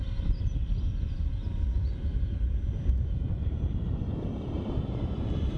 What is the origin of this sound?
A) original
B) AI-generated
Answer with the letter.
B